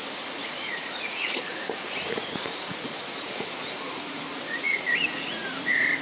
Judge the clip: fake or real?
fake